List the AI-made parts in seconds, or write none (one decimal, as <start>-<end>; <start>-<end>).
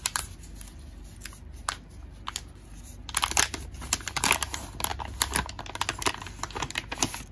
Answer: none